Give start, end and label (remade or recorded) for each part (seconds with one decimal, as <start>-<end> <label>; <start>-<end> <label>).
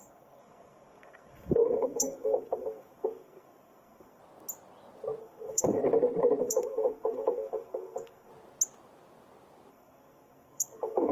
0.0-4.2 remade; 4.2-5.2 recorded; 5.2-5.8 remade; 5.8-6.4 recorded; 6.4-8.3 remade; 8.3-9.7 recorded; 9.7-11.1 remade